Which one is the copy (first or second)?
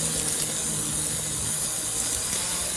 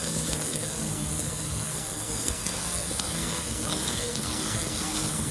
second